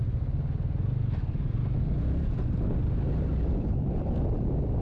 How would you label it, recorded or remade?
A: recorded